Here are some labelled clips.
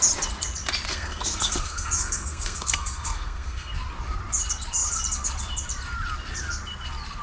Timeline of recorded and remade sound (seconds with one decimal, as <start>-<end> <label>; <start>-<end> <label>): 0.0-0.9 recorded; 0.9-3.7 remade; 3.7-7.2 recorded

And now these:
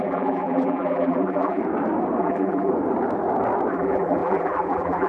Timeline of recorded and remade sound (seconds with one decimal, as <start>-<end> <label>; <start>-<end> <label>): 0.0-1.6 remade; 1.6-2.2 recorded; 2.2-2.7 remade; 2.7-3.7 recorded; 3.7-5.1 remade

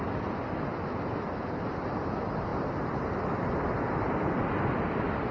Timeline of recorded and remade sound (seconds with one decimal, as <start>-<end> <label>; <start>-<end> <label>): 0.0-5.3 recorded